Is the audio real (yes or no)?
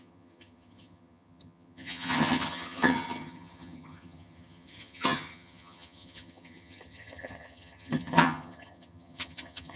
no